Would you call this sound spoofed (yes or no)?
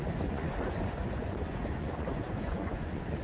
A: yes